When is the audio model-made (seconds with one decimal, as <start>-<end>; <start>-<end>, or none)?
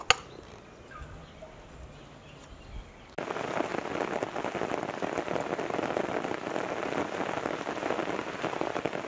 none